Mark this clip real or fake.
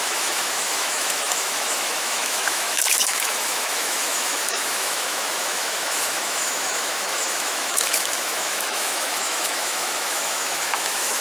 fake